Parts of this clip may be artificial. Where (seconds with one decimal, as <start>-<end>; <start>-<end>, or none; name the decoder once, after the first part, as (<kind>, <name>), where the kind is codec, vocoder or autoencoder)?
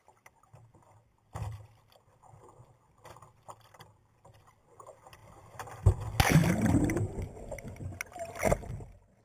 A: 5.2-5.9 (vocoder, BigVGAN v2)